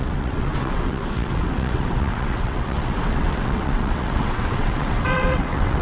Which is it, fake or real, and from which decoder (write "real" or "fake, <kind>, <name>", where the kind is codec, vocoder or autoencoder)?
fake, vocoder, WaveNeXt